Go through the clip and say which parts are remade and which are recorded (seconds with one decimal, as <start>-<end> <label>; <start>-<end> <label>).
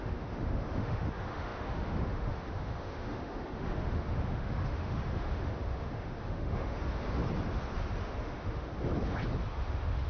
0.0-7.2 remade; 7.2-8.0 recorded; 8.0-8.7 remade; 8.7-9.5 recorded; 9.5-10.1 remade